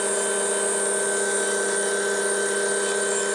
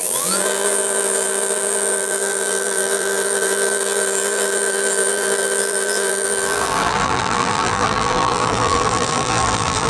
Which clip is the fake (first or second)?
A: second